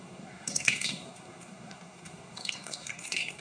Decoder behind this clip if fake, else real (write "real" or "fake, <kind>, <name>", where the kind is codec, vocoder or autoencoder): fake, codec, SNAC